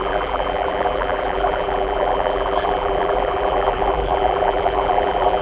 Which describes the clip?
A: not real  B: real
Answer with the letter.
A